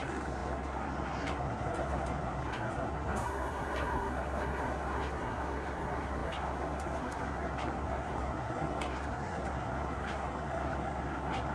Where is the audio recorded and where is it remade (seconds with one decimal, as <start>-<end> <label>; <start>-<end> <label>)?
0.0-11.5 remade